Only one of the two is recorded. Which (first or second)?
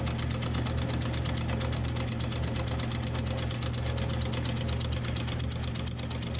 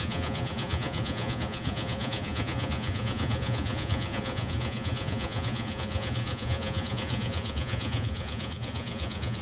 first